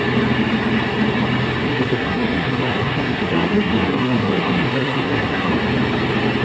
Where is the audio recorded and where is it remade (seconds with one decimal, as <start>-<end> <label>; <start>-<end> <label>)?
0.0-1.7 recorded; 1.7-5.5 remade; 5.5-6.4 recorded